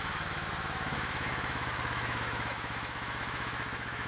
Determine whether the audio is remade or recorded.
remade